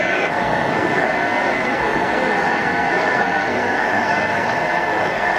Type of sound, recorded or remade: remade